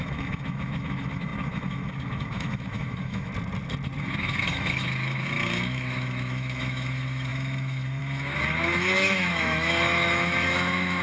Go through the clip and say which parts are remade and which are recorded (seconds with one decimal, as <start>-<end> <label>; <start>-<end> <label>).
0.0-3.3 remade; 3.3-4.0 recorded; 4.0-11.0 remade